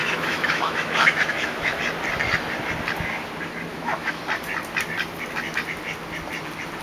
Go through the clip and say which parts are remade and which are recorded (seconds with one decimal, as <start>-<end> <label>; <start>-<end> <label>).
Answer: 0.0-1.8 remade; 1.8-3.7 recorded; 3.7-4.2 remade; 4.2-6.8 recorded

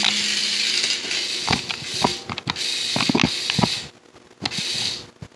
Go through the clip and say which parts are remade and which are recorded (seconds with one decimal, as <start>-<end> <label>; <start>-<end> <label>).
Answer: 0.0-5.4 recorded

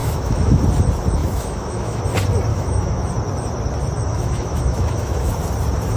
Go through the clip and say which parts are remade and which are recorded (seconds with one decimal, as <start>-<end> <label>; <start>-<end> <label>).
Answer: 0.0-0.6 remade; 0.6-1.2 recorded; 1.2-2.0 remade; 2.0-2.5 recorded; 2.5-3.1 remade; 3.1-4.1 recorded; 4.1-5.3 remade; 5.3-6.0 recorded